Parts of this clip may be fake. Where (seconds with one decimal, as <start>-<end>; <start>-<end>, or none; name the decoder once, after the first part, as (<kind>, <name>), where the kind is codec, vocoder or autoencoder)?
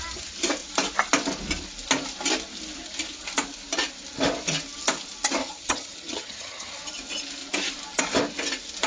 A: 5.4-6.9 (vocoder, HiFi-GAN)